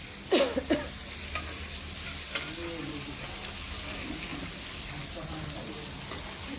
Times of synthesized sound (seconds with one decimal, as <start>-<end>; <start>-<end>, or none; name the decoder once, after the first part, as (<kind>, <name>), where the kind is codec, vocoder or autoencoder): none